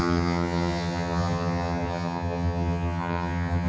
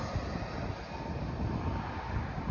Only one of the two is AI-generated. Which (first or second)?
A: first